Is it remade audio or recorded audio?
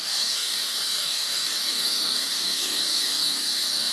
remade